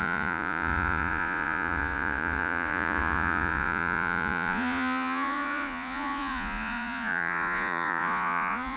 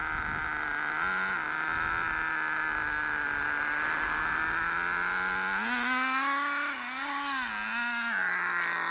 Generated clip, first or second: first